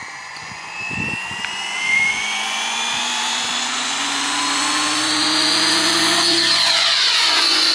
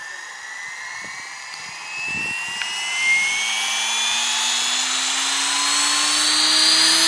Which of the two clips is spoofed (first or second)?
first